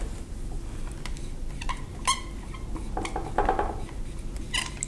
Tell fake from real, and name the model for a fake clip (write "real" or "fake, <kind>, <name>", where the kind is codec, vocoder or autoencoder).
real